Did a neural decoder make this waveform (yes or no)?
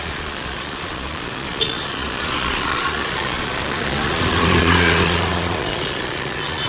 yes